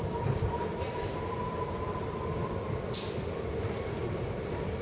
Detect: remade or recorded remade